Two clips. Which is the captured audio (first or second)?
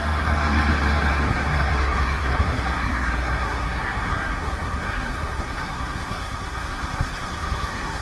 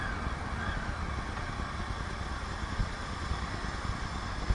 second